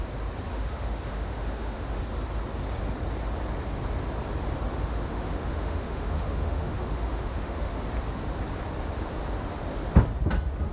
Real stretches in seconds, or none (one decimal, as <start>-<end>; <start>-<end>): 0.0-0.5; 2.0-4.7; 7.8-10.7